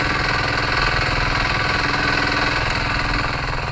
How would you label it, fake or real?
real